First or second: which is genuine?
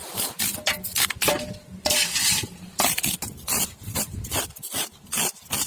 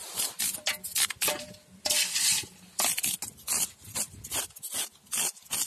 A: second